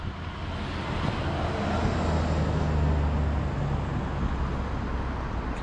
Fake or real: real